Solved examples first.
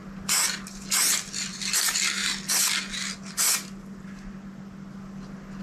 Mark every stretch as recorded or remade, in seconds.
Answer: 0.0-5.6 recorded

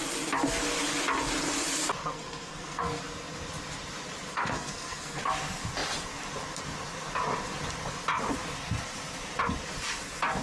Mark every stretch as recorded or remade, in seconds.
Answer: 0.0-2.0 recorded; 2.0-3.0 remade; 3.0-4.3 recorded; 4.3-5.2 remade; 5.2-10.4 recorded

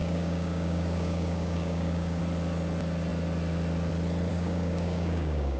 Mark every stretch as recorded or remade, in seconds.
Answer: 0.0-2.2 remade; 2.2-4.3 recorded; 4.3-5.6 remade